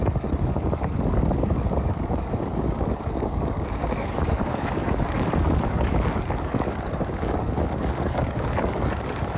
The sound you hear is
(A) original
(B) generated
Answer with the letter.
B